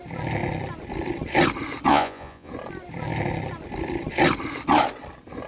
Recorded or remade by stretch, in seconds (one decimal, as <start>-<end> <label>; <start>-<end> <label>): 0.0-1.9 recorded; 1.9-2.5 remade; 2.5-5.5 recorded